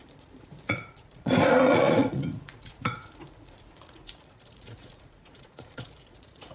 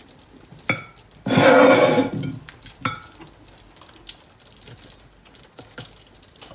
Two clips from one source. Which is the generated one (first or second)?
first